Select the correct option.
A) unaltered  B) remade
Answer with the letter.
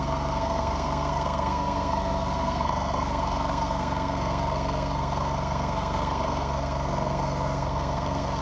B